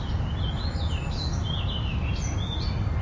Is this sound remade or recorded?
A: recorded